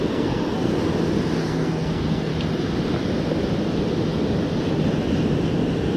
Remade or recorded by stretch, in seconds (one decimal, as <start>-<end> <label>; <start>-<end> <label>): 0.0-0.7 remade; 0.7-1.4 recorded; 1.4-2.3 remade; 2.3-6.0 recorded